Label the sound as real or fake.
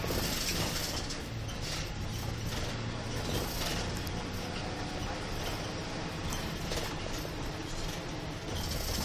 real